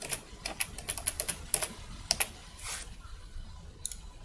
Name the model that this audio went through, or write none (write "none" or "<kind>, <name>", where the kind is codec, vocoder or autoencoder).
none